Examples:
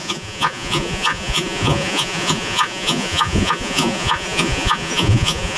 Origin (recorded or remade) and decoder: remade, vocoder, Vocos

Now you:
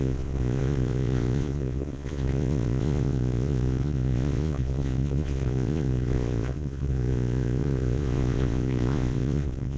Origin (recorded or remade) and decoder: remade, vocoder, Vocos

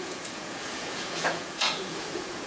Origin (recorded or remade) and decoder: remade, vocoder, Vocos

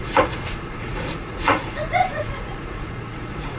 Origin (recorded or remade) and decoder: remade, vocoder, Vocos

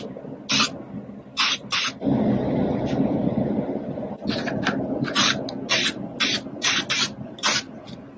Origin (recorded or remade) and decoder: recorded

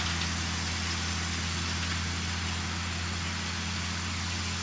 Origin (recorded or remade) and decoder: recorded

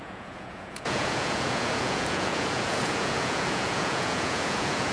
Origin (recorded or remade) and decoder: remade, vocoder, Vocos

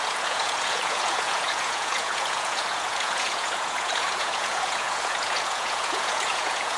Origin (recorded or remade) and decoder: remade, vocoder, Vocos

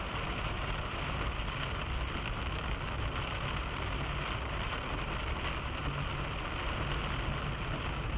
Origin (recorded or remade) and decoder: recorded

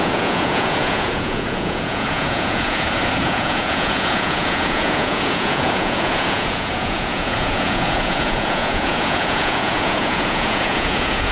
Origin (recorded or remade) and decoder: remade, vocoder, Vocos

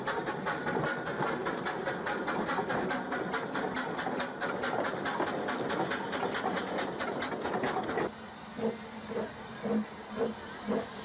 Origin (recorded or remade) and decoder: recorded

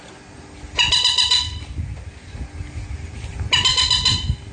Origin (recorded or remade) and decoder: recorded